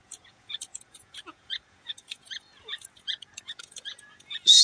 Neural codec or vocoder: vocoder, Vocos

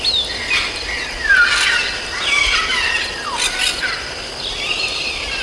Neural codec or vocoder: none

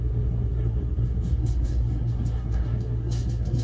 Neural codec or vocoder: codec, SNAC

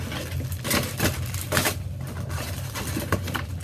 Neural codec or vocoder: none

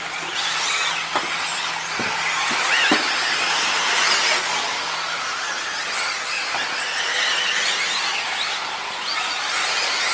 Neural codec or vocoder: none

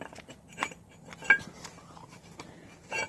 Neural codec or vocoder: none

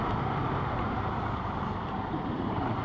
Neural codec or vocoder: vocoder, BigVGAN v2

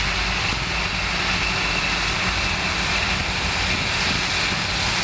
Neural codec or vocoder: none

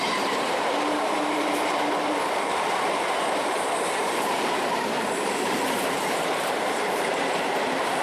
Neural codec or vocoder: vocoder, BigVGAN v2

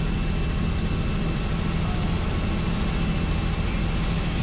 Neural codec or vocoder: none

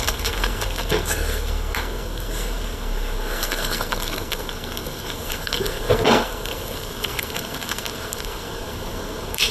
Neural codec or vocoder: codec, SNAC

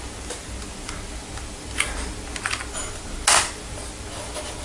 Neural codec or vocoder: none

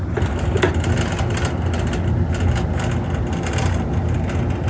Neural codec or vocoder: none